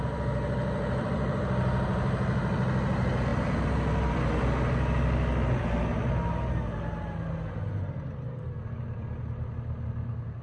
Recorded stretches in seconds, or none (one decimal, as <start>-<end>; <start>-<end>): 0.0-10.4